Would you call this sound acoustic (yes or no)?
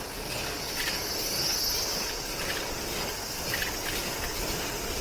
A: yes